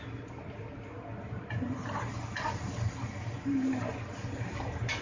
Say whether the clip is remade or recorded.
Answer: recorded